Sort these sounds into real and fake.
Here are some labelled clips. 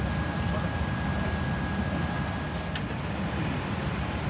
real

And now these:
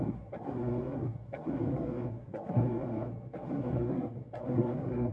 fake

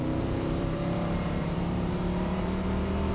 fake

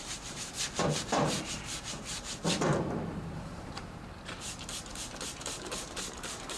fake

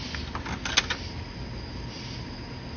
real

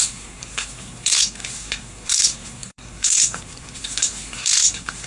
fake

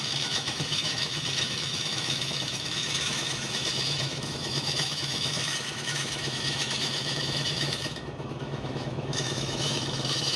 fake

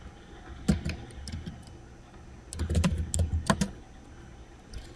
real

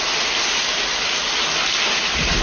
real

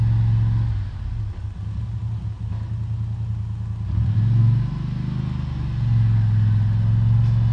real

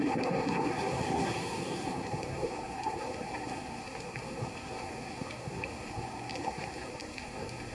fake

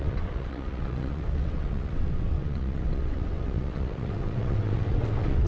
fake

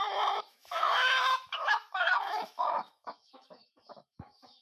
fake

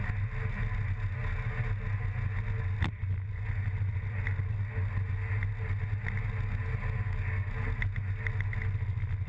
real